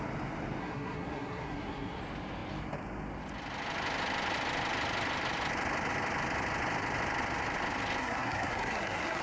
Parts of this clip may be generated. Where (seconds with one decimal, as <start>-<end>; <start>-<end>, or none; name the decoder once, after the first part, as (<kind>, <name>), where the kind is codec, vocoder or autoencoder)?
0.6-2.0 (codec, SNAC); 8.0-9.2